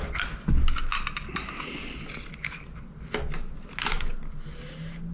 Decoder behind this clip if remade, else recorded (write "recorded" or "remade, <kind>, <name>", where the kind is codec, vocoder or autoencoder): recorded